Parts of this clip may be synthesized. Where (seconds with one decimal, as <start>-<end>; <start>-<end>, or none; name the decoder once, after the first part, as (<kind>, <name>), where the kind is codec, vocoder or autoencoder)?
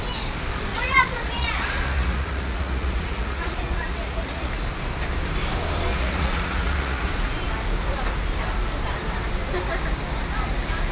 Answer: 0.7-4.5 (vocoder, Vocos); 5.9-7.1